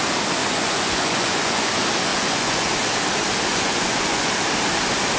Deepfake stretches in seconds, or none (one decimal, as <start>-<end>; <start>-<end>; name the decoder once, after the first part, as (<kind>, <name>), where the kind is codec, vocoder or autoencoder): 0.4-1.7 (vocoder, Vocos); 2.1-2.7; 3.5-4.3